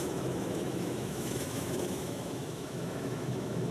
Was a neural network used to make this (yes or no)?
yes